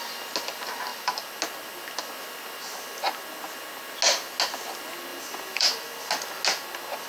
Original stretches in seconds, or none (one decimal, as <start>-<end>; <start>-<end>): 0.0-0.9; 1.4-5.1; 5.9-7.1